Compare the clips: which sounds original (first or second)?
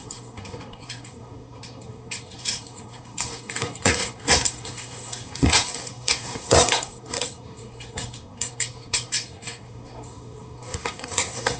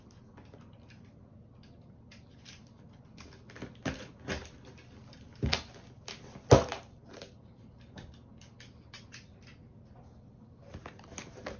second